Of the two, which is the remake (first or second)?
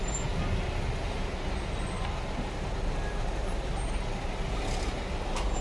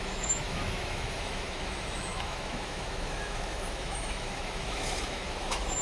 second